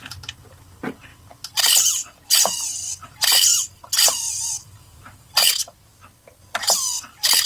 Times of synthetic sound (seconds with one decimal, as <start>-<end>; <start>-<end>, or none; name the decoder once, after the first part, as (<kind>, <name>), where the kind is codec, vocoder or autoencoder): 3.5-4.3 (vocoder, BigVGAN v2); 4.8-5.4